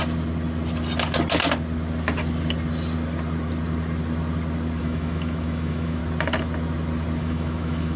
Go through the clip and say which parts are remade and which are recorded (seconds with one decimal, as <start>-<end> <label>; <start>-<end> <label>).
0.0-4.8 recorded; 4.8-6.0 remade; 6.0-7.2 recorded; 7.2-8.0 remade